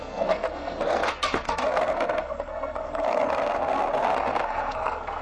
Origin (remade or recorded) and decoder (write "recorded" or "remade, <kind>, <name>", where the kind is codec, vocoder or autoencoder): remade, codec, SNAC